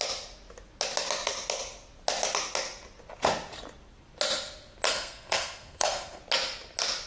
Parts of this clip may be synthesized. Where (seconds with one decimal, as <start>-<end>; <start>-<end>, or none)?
4.9-6.2